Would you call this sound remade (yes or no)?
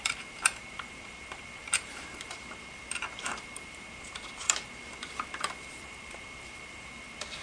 yes